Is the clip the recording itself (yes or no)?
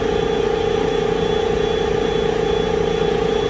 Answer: yes